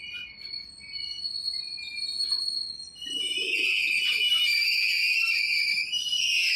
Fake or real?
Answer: real